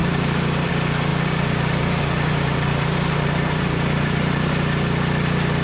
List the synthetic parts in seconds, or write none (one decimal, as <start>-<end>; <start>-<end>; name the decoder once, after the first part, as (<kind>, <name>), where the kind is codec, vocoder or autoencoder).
0.0-0.7 (vocoder, BigVGAN v2); 1.1-4.5